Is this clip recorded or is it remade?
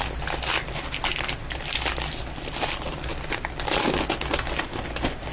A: recorded